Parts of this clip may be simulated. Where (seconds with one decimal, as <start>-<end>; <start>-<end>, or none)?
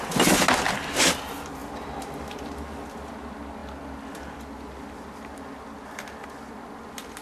none